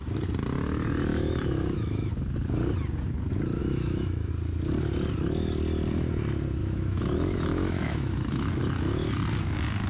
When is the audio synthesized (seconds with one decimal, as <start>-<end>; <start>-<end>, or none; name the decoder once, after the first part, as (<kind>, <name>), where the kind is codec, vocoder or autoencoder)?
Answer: 1.1-2.1 (autoencoder, DAC-VAE); 3.6-4.3; 6.6-8.5